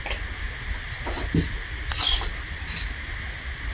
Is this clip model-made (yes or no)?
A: no